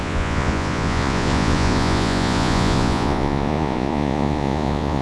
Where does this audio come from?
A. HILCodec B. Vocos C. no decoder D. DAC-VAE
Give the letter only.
B